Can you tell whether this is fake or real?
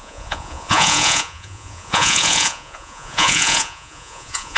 fake